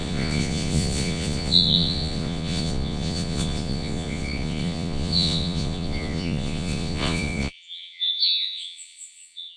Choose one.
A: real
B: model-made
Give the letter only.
B